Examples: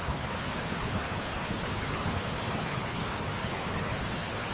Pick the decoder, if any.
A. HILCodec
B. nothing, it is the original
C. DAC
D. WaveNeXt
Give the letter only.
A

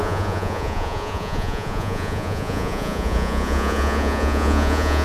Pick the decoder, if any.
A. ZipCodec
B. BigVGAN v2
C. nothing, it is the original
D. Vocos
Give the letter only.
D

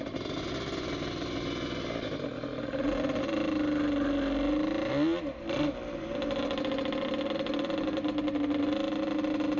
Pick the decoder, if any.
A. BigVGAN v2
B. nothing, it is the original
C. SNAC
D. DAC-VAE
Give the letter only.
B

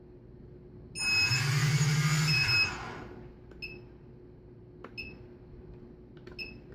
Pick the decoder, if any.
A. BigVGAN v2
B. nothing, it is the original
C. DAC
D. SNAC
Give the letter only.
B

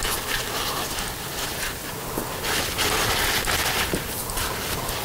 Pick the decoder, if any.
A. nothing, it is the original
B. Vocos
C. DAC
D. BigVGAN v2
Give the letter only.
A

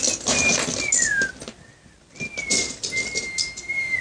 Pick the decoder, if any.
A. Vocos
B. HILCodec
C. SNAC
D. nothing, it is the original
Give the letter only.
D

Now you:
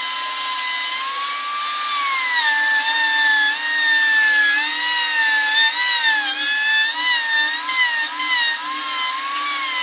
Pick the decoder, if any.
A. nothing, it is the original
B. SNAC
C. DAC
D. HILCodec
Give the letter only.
A